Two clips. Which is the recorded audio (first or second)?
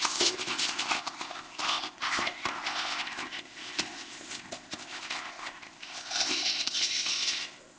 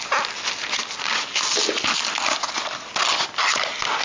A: second